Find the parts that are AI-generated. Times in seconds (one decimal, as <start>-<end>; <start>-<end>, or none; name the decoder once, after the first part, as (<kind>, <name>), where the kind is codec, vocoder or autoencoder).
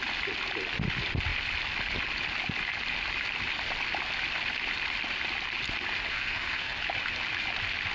6.1-6.8 (codec, SNAC)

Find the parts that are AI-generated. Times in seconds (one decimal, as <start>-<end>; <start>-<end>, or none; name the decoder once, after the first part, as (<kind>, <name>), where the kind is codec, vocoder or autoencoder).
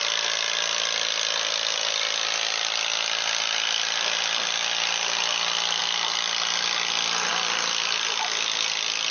none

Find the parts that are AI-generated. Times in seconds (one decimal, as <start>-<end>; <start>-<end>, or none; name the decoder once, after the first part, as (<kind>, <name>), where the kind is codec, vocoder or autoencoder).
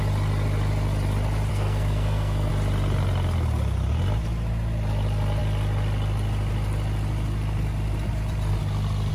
1.5-2.5 (codec, SNAC)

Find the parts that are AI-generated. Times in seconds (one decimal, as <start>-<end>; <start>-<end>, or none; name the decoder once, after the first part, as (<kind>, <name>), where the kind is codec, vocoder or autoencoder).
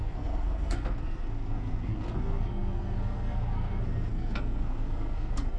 0.0-5.6 (codec, SNAC)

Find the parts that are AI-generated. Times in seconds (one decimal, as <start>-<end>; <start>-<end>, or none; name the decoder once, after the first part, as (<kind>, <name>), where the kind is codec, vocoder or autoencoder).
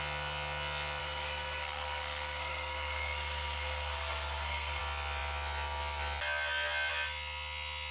1.0-4.8 (codec, SNAC)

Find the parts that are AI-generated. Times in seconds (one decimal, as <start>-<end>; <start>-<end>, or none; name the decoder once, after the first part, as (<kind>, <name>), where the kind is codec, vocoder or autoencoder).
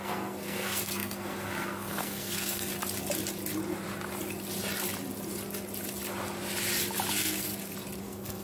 0.0-2.7 (codec, SNAC); 7.1-7.5; 8.0-8.4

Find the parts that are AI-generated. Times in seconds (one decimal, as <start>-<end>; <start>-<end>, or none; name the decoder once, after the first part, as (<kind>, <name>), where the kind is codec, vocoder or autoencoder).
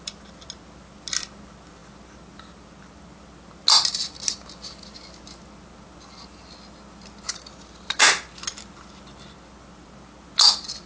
none